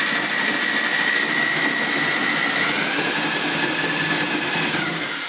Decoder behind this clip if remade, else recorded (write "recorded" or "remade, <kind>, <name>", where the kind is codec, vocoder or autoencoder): recorded